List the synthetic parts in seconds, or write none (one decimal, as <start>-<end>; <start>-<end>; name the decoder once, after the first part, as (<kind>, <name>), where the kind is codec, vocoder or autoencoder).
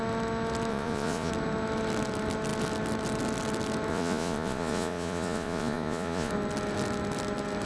0.7-1.3 (vocoder, Vocos); 3.9-6.3